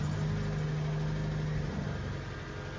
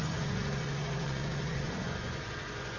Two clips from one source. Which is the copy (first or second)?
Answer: second